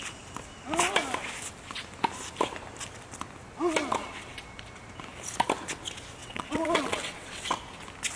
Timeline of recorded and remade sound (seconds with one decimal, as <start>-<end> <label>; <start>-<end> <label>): 0.0-6.2 recorded; 6.2-7.6 remade; 7.6-8.2 recorded